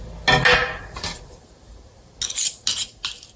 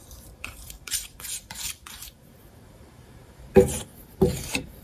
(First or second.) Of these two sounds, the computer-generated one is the second